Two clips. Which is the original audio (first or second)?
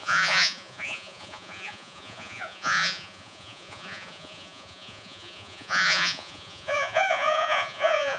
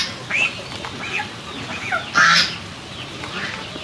second